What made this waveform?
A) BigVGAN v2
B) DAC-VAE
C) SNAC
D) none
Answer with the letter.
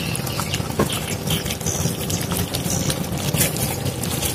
D